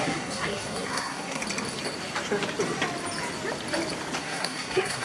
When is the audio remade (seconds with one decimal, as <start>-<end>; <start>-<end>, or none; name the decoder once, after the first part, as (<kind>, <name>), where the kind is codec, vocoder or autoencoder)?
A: 0.0-1.4 (codec, SNAC); 4.2-5.0